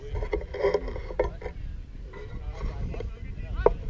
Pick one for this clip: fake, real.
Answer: real